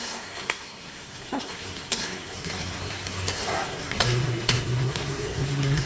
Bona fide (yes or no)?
no